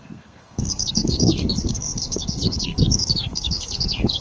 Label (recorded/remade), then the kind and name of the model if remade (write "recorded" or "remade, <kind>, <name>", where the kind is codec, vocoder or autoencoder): remade, codec, SNAC